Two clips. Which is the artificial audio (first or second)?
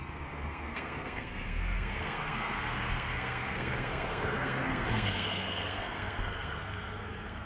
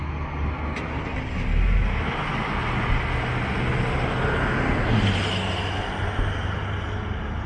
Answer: first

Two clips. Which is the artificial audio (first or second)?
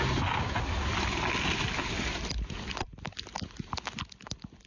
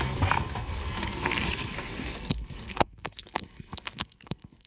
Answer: second